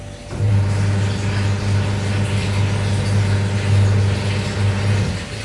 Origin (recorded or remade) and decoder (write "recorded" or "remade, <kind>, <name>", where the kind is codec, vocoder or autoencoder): recorded